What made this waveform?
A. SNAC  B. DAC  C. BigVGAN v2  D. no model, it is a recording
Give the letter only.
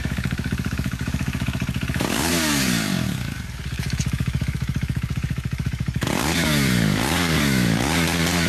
B